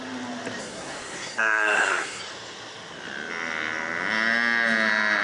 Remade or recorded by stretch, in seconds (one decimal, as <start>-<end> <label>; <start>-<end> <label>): 0.0-0.6 recorded; 0.6-2.2 remade; 2.2-5.2 recorded